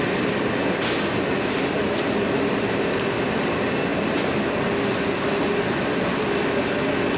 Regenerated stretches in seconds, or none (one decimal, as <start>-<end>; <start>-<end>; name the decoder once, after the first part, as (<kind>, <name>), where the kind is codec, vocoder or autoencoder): none